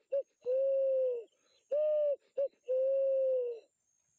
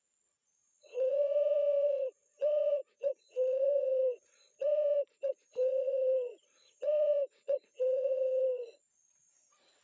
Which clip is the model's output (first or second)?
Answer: second